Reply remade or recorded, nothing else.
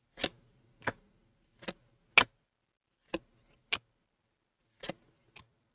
recorded